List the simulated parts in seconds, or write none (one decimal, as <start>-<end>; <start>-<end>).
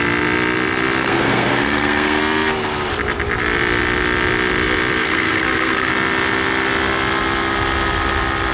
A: 1.0-2.2; 5.0-5.9